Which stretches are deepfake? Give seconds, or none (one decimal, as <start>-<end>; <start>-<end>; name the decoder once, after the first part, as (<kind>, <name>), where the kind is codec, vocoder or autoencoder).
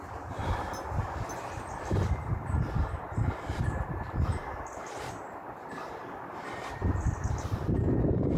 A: none